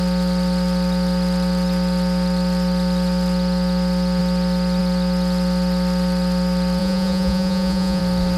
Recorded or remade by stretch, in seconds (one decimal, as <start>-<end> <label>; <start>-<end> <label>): 0.0-6.8 recorded; 6.8-8.0 remade; 8.0-8.4 recorded